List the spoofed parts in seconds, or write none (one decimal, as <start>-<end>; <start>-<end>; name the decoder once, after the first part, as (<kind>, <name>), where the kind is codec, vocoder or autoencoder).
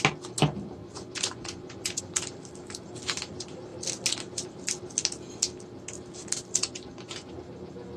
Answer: 0.8-2.0 (vocoder, Vocos); 6.6-7.3